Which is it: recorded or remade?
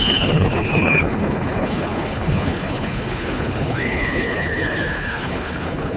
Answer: remade